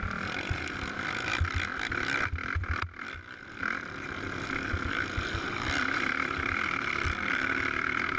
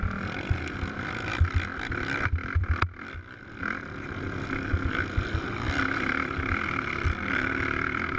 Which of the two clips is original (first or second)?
second